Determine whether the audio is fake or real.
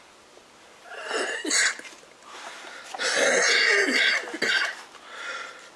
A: real